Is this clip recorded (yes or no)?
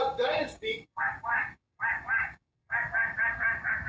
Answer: no